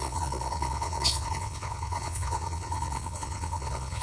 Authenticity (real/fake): fake